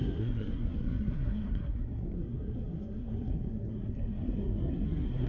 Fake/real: fake